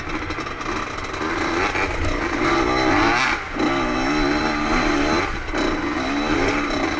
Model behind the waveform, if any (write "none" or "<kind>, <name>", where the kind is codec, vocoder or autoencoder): none